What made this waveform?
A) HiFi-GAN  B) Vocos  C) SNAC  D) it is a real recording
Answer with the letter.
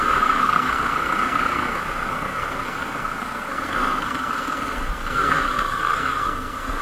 C